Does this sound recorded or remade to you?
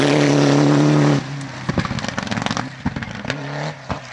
recorded